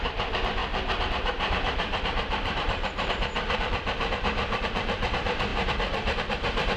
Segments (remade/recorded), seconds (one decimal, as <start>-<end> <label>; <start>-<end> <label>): 0.0-0.6 remade; 0.6-1.1 recorded; 1.1-6.8 remade